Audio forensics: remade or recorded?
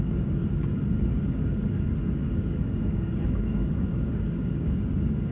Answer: remade